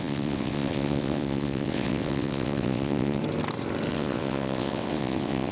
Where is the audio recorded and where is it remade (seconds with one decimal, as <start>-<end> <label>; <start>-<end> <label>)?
0.0-3.2 remade; 3.2-3.9 recorded; 3.9-5.5 remade